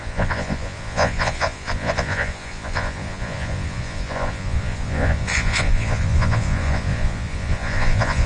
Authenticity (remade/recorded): remade